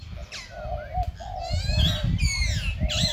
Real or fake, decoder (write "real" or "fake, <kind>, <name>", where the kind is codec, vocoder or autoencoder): real